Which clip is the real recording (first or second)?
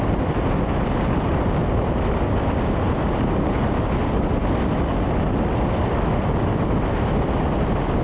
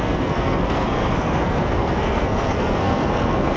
first